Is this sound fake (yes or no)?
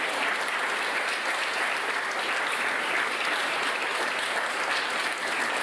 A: no